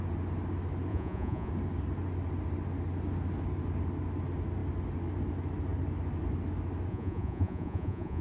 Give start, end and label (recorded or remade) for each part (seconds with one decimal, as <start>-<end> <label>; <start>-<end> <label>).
0.0-0.9 recorded; 0.9-1.5 remade; 1.5-6.9 recorded; 6.9-8.2 remade